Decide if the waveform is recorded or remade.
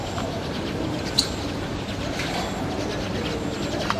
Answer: recorded